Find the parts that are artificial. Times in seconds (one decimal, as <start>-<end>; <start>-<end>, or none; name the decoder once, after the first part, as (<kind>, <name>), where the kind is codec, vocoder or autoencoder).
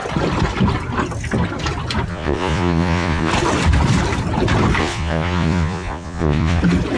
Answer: 2.1-3.3 (vocoder, Vocos); 4.8-6.6